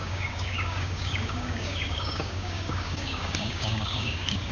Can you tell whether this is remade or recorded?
remade